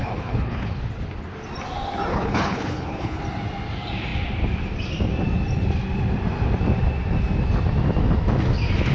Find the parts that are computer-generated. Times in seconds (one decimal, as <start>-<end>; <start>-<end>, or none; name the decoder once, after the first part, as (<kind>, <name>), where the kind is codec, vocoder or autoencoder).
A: 0.0-0.8 (codec, HILCodec); 2.1-3.2